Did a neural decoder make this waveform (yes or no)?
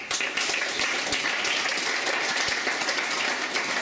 no